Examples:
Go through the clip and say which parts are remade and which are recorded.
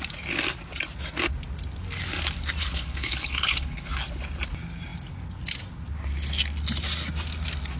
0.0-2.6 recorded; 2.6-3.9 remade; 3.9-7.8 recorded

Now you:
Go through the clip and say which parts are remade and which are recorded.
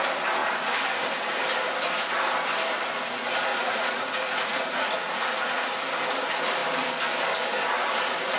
0.0-3.5 recorded; 3.5-5.8 remade; 5.8-8.4 recorded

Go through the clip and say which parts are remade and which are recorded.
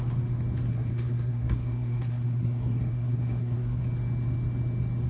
0.0-0.7 recorded; 0.7-3.8 remade; 3.8-5.1 recorded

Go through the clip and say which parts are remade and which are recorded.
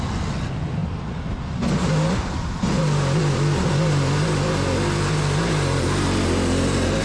0.0-7.0 recorded